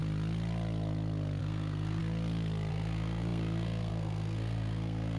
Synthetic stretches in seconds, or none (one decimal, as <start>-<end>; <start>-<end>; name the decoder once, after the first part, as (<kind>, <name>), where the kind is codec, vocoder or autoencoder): 1.4-2.0 (codec, SNAC); 2.7-5.2